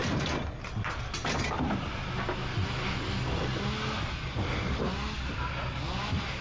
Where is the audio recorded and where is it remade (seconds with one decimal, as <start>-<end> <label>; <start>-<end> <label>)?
0.0-6.4 recorded